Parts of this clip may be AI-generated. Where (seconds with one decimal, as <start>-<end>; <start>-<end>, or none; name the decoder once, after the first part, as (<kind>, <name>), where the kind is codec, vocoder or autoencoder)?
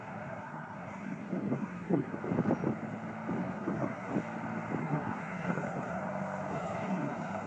0.0-2.2 (codec, SNAC); 3.4-4.1; 4.8-6.0; 6.5-7.5